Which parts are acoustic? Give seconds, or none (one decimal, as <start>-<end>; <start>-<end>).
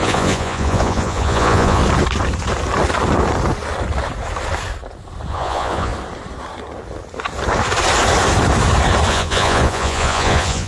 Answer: 1.8-5.3; 5.9-9.1